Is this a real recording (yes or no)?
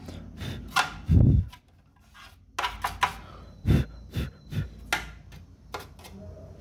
yes